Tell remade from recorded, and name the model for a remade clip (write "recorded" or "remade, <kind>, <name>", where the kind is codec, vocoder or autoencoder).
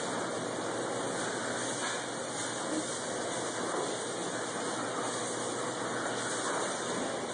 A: recorded